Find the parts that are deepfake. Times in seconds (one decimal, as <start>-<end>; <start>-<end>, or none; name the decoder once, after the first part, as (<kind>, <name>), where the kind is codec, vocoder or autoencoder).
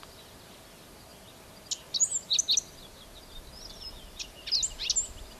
none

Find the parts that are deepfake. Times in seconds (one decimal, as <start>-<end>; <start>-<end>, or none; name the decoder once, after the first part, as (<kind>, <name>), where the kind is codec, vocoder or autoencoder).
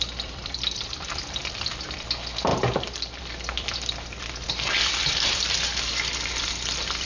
0.0-7.1 (vocoder, BigVGAN v2)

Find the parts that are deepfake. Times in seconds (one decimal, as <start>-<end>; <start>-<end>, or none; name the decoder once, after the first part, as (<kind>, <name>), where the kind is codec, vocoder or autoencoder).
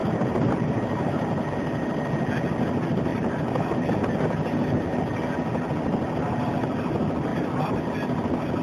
0.0-1.6 (vocoder, BigVGAN v2); 3.1-3.7; 7.3-7.8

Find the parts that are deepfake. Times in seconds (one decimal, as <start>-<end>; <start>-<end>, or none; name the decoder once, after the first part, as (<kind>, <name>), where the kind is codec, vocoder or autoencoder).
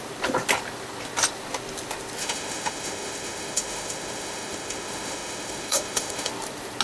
2.2-6.3 (autoencoder, DAC-VAE)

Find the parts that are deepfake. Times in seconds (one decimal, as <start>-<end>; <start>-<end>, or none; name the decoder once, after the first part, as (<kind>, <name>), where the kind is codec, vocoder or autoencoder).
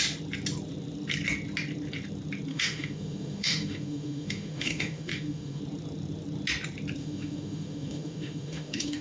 2.5-5.6 (autoencoder, DAC-VAE); 7.0-9.0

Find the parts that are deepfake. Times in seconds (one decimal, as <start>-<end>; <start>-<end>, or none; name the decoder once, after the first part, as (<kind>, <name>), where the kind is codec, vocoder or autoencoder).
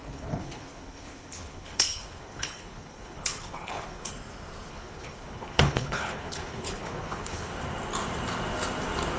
0.0-4.1 (codec, HILCodec); 4.7-7.5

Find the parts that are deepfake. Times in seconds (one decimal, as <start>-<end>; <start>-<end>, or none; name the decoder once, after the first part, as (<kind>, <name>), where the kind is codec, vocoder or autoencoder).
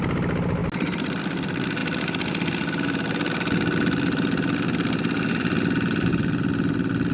none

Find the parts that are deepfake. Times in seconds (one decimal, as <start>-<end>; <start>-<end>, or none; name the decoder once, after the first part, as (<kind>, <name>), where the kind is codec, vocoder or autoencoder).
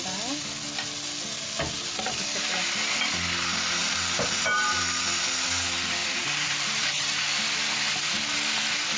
3.8-4.8 (vocoder, BigVGAN v2); 6.0-7.0